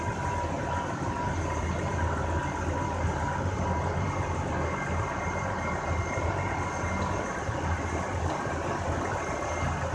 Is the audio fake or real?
real